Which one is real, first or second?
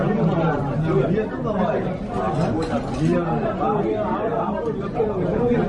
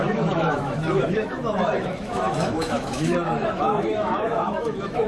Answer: first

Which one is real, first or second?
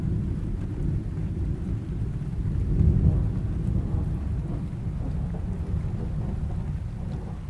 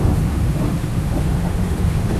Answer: first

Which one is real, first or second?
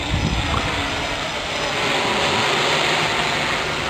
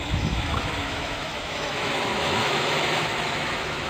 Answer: first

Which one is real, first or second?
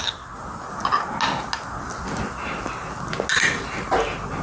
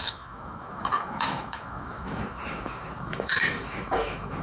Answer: first